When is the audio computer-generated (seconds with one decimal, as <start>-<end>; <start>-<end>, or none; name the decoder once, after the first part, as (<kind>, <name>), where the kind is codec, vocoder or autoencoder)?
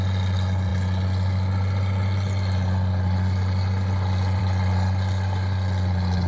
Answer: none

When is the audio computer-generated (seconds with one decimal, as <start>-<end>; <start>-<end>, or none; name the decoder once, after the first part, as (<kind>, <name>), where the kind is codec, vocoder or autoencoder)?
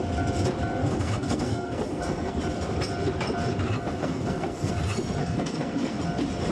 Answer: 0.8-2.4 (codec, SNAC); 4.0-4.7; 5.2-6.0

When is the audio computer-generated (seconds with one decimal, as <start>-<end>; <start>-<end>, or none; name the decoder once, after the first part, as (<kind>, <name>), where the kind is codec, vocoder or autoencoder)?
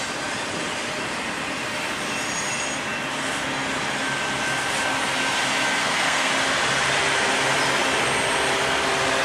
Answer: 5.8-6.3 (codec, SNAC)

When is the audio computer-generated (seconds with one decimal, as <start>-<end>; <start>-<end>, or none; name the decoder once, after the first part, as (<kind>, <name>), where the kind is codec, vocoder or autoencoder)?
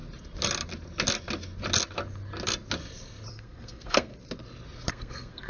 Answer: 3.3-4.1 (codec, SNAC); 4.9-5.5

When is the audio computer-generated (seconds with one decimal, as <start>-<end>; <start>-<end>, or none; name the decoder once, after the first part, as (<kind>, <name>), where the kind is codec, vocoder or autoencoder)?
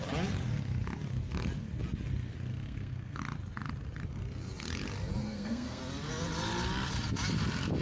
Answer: 2.5-3.2 (codec, SNAC); 5.2-5.8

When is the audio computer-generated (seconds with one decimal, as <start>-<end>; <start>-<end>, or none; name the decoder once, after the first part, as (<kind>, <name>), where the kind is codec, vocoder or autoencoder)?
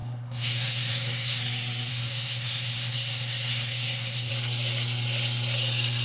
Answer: 0.0-1.4 (codec, SNAC); 1.9-4.3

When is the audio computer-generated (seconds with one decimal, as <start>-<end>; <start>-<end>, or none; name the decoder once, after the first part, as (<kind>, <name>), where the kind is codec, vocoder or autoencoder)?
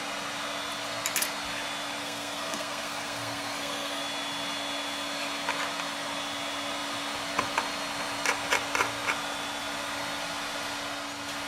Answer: 2.0-4.0 (codec, SNAC)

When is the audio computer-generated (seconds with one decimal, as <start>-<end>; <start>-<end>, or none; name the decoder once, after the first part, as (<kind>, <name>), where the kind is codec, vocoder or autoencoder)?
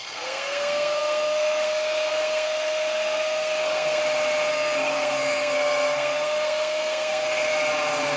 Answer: 0.0-4.0 (codec, SNAC); 4.5-7.5